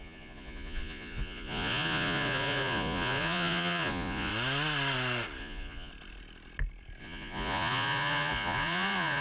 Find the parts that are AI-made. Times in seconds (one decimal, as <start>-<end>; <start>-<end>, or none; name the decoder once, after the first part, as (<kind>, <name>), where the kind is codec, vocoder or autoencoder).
0.0-4.3 (vocoder, Vocos); 5.4-5.9; 7.0-9.2